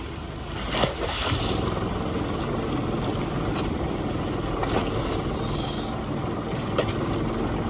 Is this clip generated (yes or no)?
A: no